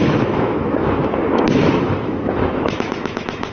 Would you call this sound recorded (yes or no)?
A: no